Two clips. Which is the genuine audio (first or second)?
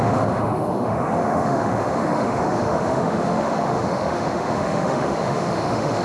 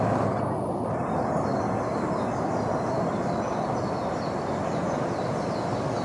second